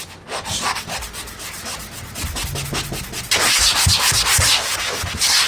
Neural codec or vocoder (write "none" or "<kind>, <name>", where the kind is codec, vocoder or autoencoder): none